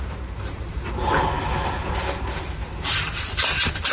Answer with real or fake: real